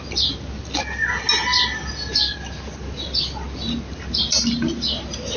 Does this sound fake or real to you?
real